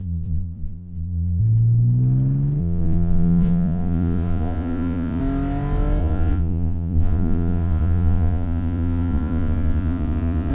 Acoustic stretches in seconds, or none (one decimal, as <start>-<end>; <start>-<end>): 1.4-2.6; 5.2-6.0